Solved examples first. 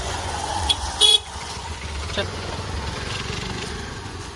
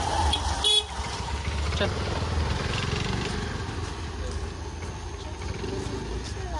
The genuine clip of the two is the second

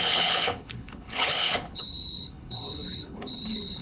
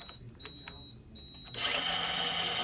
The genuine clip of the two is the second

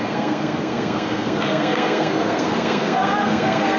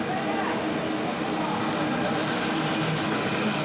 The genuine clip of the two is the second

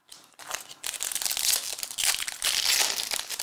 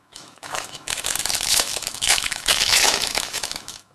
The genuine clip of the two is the first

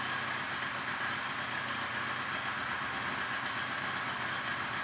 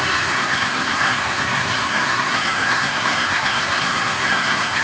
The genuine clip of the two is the first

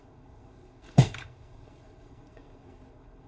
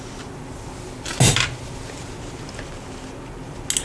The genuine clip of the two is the second